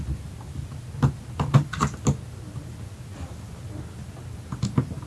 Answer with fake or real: real